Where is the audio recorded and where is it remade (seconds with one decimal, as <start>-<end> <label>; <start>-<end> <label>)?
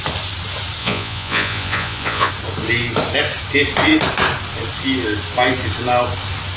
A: 0.0-0.8 recorded; 0.8-2.3 remade; 2.3-6.6 recorded